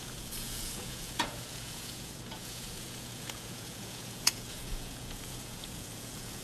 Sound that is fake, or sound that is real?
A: fake